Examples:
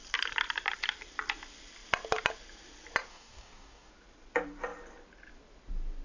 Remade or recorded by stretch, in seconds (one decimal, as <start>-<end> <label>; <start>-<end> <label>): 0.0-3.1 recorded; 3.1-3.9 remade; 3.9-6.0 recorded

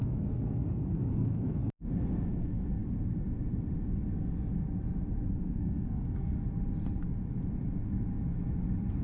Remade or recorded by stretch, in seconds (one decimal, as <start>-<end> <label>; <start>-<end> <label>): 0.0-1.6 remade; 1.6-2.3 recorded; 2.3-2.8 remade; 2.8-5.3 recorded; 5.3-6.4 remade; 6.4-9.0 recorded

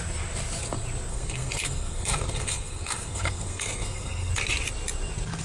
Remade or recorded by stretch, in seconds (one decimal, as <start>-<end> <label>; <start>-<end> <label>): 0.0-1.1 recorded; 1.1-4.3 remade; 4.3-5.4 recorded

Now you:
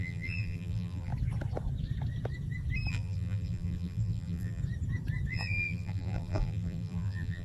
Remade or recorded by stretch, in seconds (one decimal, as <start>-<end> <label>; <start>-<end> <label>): 0.0-1.1 remade; 1.1-2.9 recorded; 2.9-4.6 remade; 4.6-5.3 recorded; 5.3-7.4 remade

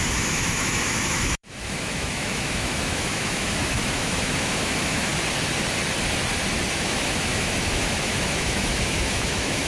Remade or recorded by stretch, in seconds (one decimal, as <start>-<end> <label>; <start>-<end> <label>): 0.0-5.1 remade; 5.1-6.8 recorded; 6.8-9.7 remade

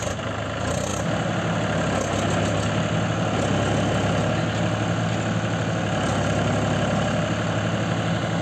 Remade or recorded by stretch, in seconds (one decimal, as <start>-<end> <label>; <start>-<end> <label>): 0.0-8.4 recorded

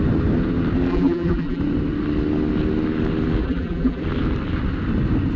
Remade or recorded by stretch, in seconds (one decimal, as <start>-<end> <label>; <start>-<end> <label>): 0.0-0.9 recorded; 0.9-1.6 remade; 1.6-3.4 recorded; 3.4-4.0 remade; 4.0-5.4 recorded